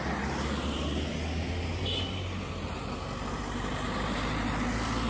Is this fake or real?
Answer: real